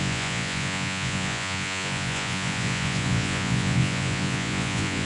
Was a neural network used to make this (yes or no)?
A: yes